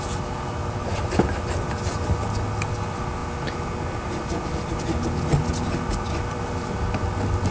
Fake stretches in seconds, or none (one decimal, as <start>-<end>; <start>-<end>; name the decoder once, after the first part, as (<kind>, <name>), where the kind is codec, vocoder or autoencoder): none